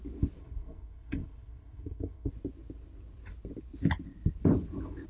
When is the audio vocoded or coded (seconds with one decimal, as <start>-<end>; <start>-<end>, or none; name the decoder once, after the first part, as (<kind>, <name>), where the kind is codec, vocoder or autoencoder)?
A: 0.4-2.3 (codec, SNAC)